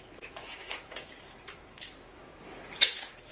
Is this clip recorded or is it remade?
remade